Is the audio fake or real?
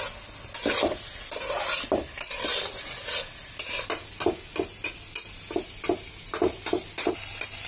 real